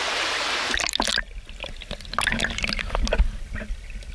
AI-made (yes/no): no